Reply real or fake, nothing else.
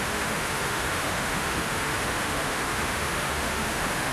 fake